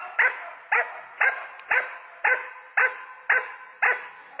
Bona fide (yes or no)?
yes